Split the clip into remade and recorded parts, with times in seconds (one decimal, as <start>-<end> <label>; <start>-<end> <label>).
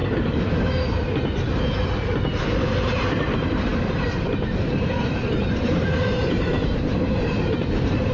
0.0-2.8 recorded; 2.8-8.1 remade